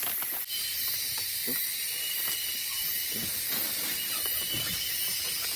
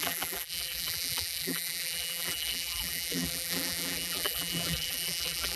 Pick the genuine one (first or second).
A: first